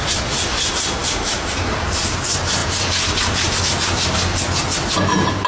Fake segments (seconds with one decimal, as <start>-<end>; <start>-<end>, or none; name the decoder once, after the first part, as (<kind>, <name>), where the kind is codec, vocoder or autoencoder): none